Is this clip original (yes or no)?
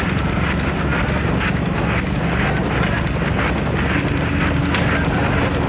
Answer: yes